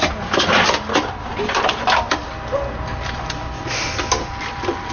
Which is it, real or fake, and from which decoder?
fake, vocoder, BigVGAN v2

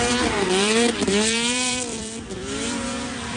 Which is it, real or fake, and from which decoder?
fake, vocoder, BigVGAN v2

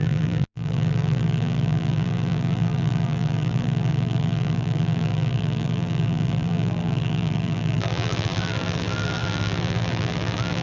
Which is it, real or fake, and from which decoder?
fake, vocoder, BigVGAN v2